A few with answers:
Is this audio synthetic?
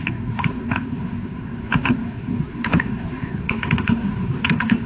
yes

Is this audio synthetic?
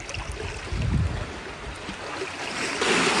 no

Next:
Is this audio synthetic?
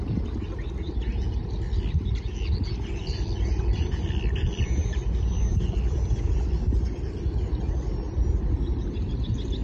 no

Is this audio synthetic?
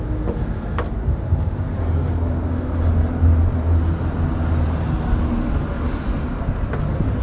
no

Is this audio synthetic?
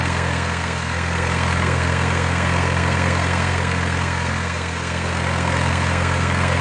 yes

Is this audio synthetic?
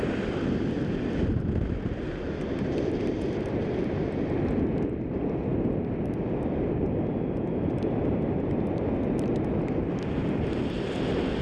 no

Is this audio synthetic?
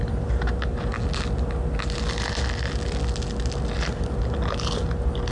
no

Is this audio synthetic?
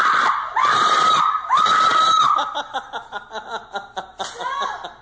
no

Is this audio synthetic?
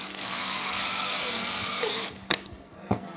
yes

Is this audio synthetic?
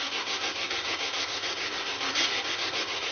yes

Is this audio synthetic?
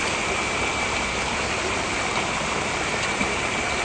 no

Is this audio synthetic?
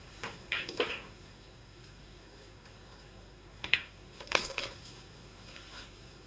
yes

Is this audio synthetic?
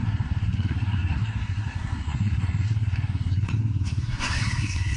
yes